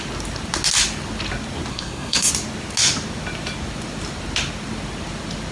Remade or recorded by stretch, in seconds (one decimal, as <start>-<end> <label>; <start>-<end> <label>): 0.0-1.7 recorded; 1.7-2.3 remade; 2.3-5.5 recorded